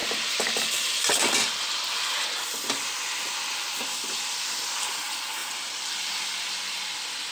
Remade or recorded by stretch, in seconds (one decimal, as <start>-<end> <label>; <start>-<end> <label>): 0.0-1.5 remade; 1.5-5.4 recorded; 5.4-6.1 remade; 6.1-7.3 recorded

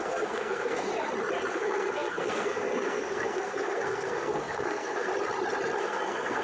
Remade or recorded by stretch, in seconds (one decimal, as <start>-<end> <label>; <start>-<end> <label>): 0.0-0.9 remade; 0.9-1.5 recorded; 1.5-5.1 remade; 5.1-5.8 recorded; 5.8-6.4 remade

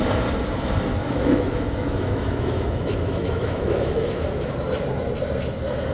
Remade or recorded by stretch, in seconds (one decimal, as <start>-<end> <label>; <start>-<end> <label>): 0.0-1.0 recorded; 1.0-4.5 remade; 4.5-5.9 recorded

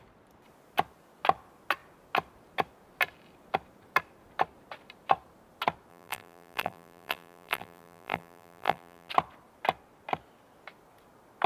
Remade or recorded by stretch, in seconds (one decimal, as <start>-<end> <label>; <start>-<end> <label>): 0.0-5.9 recorded; 5.9-9.1 remade; 9.1-11.5 recorded